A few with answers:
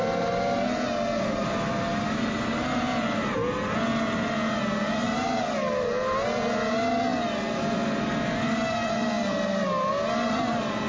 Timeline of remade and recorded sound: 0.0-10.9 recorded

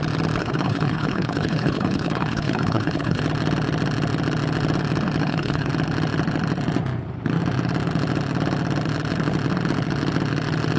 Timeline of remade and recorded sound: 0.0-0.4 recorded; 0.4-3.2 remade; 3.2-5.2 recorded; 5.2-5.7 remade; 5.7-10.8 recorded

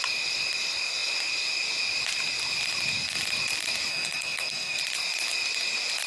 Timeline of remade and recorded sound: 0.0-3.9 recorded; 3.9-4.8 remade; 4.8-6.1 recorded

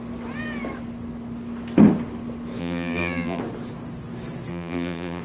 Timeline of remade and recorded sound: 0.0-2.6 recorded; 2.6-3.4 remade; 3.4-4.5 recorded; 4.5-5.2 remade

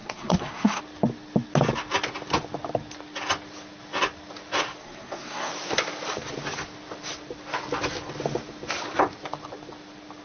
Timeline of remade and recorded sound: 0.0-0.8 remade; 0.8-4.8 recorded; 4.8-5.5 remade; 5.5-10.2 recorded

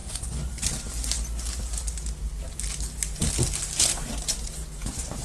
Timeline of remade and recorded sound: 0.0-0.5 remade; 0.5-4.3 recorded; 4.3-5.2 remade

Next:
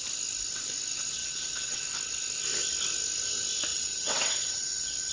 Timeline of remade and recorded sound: 0.0-1.2 recorded; 1.2-1.8 remade; 1.8-3.7 recorded; 3.7-5.1 remade